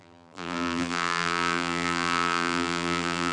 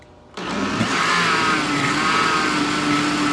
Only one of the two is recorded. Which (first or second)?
second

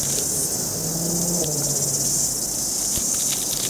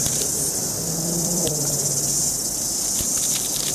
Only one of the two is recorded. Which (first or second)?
first